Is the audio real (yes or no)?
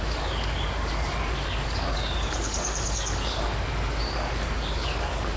no